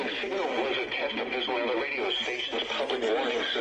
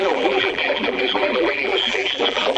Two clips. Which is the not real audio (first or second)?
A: second